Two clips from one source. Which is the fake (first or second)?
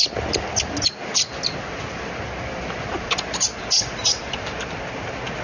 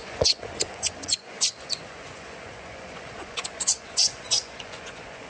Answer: second